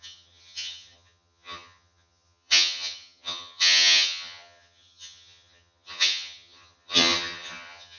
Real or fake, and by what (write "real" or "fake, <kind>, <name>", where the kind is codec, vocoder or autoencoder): fake, vocoder, HiFi-GAN